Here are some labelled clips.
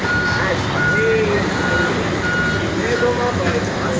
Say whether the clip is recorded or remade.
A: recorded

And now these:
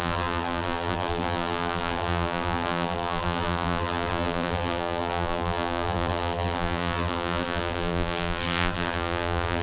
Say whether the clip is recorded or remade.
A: remade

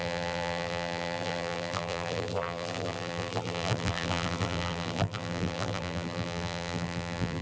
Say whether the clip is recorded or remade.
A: remade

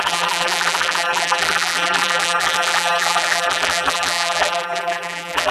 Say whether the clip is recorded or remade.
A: remade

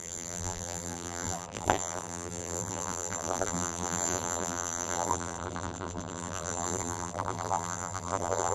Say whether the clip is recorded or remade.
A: remade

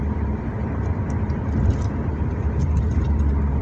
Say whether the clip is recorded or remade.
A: remade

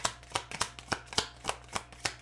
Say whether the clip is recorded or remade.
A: recorded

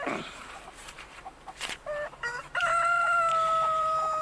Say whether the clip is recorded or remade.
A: remade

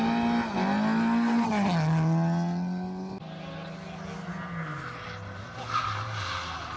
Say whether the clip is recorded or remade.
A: recorded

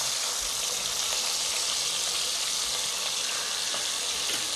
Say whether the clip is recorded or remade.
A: recorded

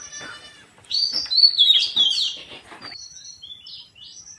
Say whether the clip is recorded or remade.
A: remade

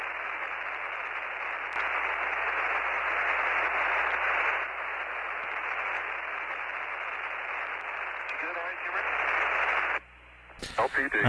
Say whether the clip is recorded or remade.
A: recorded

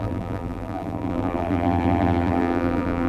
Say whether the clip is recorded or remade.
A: remade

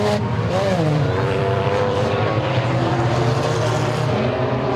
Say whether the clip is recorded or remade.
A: remade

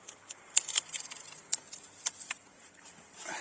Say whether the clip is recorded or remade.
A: remade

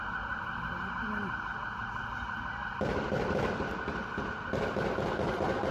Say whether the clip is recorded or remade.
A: recorded